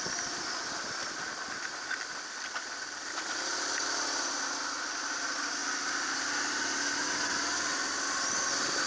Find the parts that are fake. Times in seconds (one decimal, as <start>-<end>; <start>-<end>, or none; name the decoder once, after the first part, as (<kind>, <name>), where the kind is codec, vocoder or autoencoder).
none